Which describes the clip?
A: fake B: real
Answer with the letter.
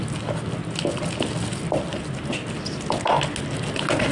B